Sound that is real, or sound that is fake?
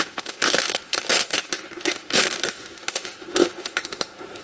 fake